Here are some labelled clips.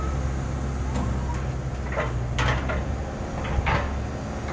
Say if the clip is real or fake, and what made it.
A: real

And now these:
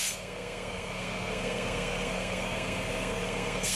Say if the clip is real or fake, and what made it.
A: fake, codec, SNAC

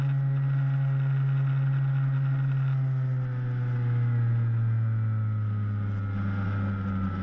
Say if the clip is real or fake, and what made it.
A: real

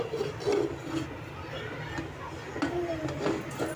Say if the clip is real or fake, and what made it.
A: real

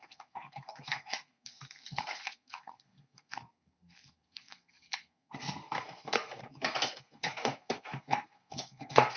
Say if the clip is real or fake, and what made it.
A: fake, codec, SNAC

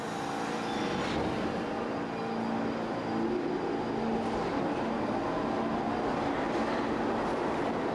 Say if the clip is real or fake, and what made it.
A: real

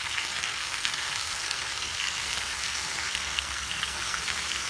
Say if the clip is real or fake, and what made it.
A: fake, codec, SNAC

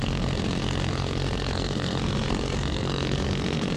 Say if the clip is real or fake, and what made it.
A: fake, codec, SNAC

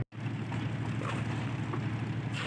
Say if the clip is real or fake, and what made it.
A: real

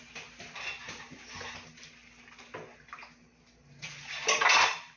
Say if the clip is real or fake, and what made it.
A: real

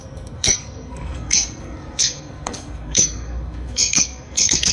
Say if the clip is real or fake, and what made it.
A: fake, codec, SNAC